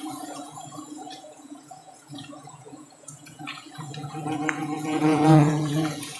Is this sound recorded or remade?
remade